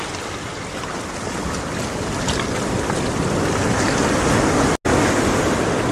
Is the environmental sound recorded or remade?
recorded